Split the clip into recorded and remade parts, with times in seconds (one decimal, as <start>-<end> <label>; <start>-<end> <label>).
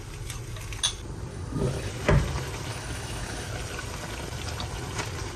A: 0.0-1.3 recorded; 1.3-1.9 remade; 1.9-2.7 recorded; 2.7-3.5 remade; 3.5-5.4 recorded